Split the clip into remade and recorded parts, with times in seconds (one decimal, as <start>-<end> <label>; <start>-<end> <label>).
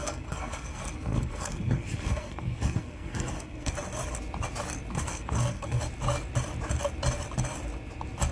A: 0.0-3.7 remade; 3.7-4.9 recorded; 4.9-5.8 remade; 5.8-8.3 recorded